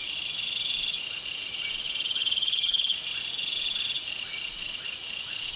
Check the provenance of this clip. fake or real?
fake